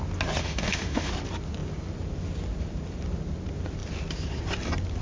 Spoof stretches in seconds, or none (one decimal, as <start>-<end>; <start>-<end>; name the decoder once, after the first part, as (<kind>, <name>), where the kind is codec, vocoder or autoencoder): 0.4-1.1 (autoencoder, DAC-VAE)